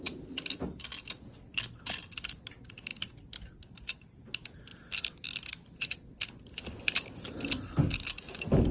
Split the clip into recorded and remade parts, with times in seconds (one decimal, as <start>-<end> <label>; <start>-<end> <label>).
0.0-8.7 recorded